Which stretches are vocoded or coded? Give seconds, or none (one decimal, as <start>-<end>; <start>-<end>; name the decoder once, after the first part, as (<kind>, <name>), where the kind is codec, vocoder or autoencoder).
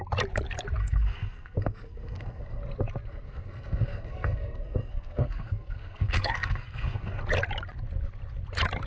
0.8-2.6 (codec, SNAC); 3.1-7.2